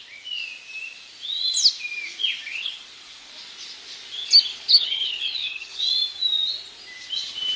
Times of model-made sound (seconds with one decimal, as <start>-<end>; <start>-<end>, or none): 2.5-3.3; 4.5-5.8